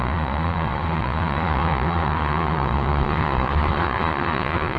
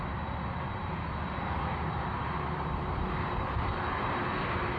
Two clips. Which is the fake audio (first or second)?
first